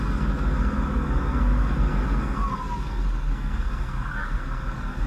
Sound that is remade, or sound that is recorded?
remade